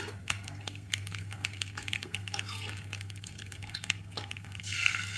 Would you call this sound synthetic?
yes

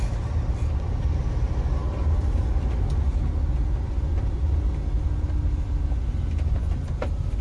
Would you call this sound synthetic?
no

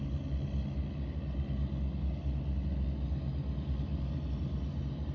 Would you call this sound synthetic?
no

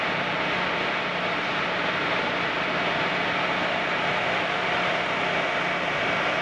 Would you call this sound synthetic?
no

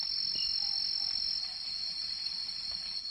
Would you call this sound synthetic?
no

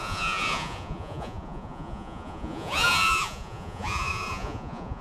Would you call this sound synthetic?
yes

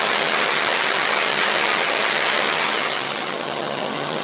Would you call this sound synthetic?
yes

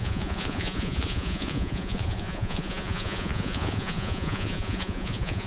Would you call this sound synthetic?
yes